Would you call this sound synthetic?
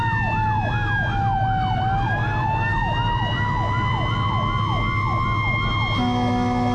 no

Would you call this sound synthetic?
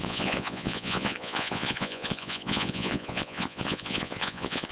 yes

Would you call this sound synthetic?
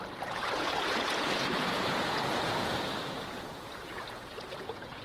yes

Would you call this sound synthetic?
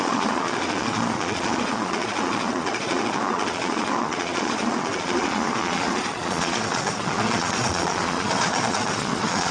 yes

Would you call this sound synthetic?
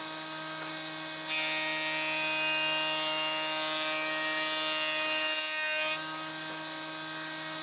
no